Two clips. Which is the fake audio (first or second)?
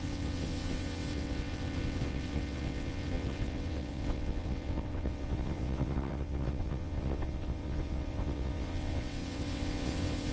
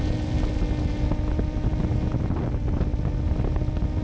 first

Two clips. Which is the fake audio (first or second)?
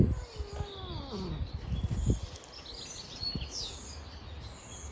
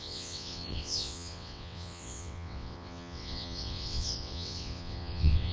second